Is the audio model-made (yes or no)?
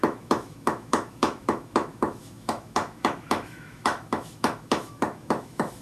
yes